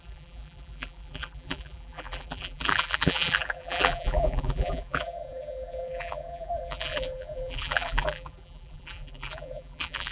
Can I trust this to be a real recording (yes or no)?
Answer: no